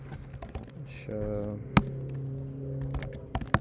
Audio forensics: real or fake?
real